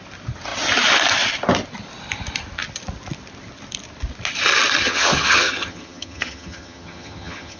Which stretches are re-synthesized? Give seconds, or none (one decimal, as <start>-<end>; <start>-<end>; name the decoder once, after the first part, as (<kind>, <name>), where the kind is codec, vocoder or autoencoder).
4.8-7.6 (vocoder, HiFi-GAN)